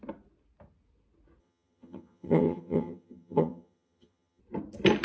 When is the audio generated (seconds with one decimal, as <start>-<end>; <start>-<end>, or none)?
1.4-4.4